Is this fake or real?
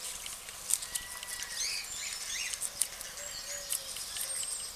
real